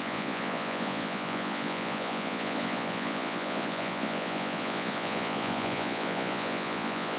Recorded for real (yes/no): no